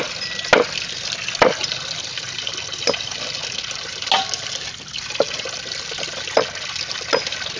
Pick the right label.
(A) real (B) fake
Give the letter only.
A